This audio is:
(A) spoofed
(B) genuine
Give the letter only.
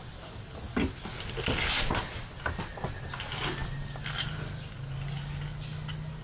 B